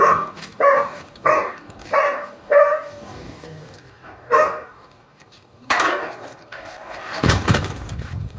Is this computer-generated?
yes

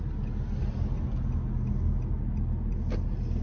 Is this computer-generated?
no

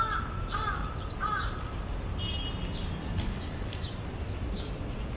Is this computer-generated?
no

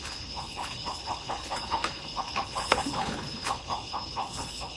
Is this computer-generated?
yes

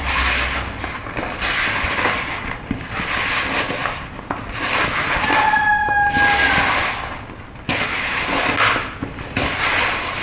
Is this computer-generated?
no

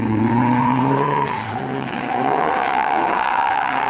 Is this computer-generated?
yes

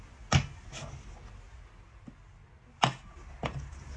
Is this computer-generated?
no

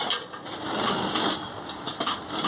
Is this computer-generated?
no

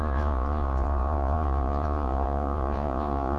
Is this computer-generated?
yes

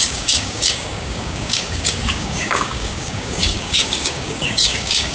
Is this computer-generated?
yes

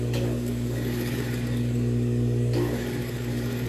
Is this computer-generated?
yes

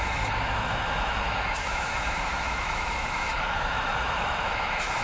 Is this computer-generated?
yes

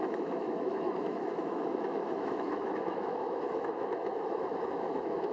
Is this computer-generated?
yes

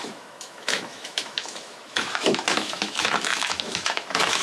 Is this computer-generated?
yes